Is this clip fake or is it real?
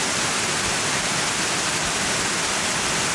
real